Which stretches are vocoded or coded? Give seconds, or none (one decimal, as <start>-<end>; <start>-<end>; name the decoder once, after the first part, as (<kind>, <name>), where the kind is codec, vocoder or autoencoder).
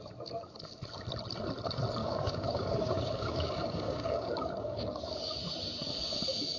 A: 2.0-5.4 (codec, DAC)